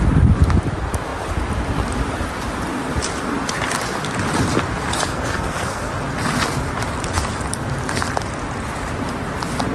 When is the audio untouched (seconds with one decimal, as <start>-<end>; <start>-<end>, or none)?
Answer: 0.0-5.1; 5.9-9.7

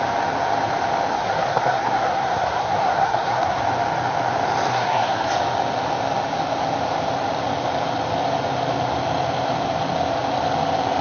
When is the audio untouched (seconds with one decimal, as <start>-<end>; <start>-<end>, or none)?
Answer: 0.0-1.1; 3.6-4.7; 5.3-11.0

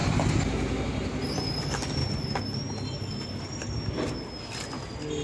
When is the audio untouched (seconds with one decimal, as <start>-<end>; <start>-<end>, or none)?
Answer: 0.0-5.2